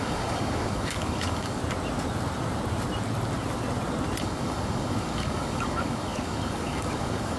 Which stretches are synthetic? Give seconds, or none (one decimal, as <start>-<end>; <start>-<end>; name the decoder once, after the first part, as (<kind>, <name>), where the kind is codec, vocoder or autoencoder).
0.0-1.6 (codec, DAC); 4.2-7.4

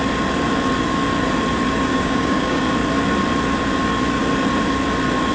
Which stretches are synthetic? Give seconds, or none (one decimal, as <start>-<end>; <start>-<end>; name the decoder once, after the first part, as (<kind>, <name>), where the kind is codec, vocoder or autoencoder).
1.9-2.6 (codec, DAC)

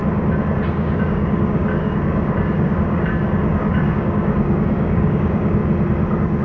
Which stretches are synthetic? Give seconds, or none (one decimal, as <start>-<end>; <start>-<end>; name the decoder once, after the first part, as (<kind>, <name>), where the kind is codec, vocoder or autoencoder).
0.7-5.6 (codec, DAC)

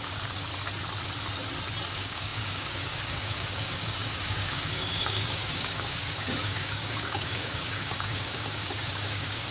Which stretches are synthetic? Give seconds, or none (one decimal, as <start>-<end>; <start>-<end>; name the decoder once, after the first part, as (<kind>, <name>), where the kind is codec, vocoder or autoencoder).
0.0-0.5 (codec, DAC); 1.9-9.5